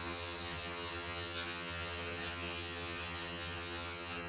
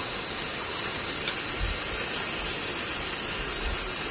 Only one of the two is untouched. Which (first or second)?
second